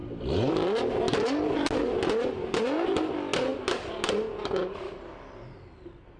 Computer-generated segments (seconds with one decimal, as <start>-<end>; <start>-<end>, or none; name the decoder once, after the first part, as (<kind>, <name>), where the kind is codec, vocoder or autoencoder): none